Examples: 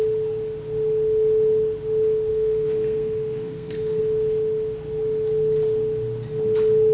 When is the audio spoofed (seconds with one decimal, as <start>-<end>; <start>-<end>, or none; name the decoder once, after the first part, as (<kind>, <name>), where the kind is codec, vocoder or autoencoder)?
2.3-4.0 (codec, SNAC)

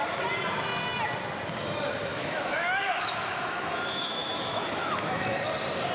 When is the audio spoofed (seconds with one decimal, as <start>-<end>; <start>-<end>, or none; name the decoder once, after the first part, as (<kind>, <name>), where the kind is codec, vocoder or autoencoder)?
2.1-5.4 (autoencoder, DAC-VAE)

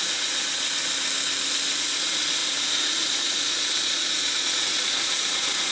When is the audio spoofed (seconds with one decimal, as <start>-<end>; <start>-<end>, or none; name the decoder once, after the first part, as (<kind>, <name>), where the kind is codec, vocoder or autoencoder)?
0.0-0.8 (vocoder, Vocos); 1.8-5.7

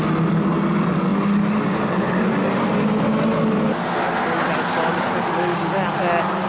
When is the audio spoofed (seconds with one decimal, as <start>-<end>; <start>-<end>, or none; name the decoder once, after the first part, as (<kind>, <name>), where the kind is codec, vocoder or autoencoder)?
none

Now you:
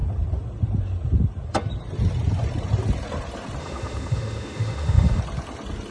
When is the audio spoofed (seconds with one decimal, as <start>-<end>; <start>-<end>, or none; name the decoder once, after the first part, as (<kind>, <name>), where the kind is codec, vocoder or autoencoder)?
3.6-5.2 (autoencoder, DAC-VAE)

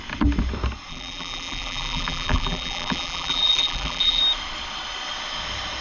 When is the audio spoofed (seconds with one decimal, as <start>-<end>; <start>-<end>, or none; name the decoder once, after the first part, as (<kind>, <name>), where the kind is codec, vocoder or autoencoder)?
0.9-4.2 (vocoder, BigVGAN v2)

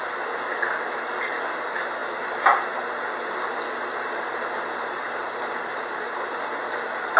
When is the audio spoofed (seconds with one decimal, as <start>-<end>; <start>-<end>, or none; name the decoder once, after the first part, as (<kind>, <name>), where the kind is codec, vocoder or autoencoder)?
none

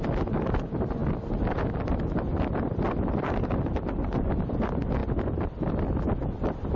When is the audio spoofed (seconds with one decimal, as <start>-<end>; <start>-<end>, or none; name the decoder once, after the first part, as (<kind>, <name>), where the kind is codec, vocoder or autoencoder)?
none